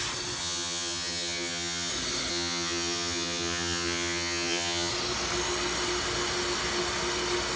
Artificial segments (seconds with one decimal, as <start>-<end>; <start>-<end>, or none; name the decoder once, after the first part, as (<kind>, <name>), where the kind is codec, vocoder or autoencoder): 0.4-1.9 (vocoder, HiFi-GAN); 2.3-4.9